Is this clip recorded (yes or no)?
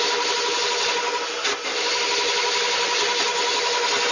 yes